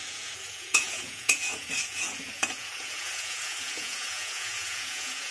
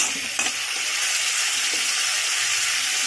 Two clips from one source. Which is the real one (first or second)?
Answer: second